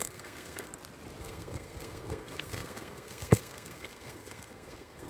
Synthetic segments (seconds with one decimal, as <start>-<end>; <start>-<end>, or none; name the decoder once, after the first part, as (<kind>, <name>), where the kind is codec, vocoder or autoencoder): 0.0-0.7 (codec, SNAC); 1.2-5.1